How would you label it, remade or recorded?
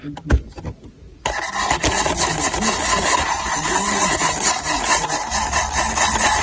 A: recorded